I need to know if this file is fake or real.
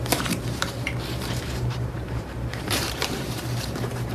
fake